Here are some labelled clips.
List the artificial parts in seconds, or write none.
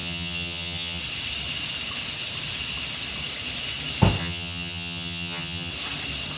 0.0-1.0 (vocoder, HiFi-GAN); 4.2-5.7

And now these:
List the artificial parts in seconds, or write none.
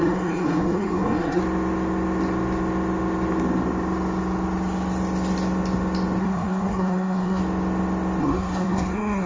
0.0-1.4 (codec, SNAC); 6.2-7.4; 8.2-9.3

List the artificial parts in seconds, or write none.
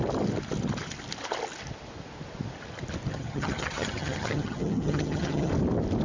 3.1-5.5 (vocoder, HiFi-GAN)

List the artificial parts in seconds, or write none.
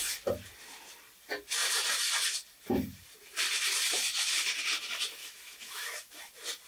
5.2-6.3 (autoencoder, DAC-VAE)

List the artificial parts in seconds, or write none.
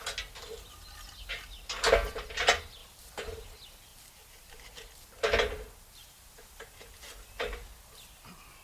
2.8-3.5 (vocoder, BigVGAN v2); 3.9-4.9; 6.0-7.6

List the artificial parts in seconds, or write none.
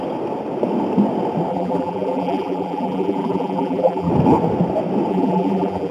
1.5-4.1 (vocoder, BigVGAN v2); 5.1-5.9